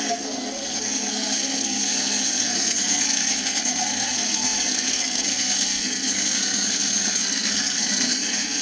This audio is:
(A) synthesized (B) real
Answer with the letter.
A